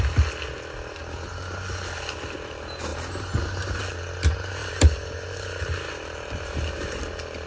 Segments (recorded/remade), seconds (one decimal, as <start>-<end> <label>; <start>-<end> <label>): 0.0-2.9 recorded; 2.9-3.8 remade; 3.8-4.6 recorded; 4.6-7.0 remade; 7.0-7.5 recorded